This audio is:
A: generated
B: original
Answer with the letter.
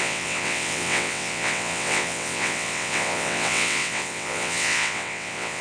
A